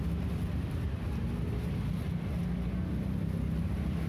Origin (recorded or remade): recorded